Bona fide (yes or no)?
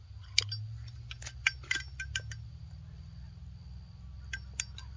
yes